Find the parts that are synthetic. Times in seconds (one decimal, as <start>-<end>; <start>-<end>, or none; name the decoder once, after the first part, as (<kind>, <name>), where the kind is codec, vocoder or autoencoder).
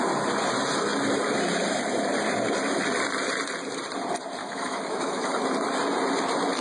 4.4-5.3 (autoencoder, DAC-VAE)